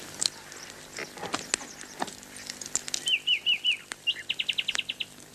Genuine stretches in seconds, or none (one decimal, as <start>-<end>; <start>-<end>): 1.0-3.8